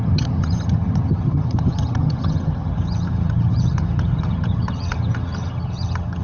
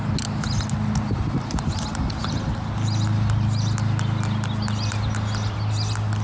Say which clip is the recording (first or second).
second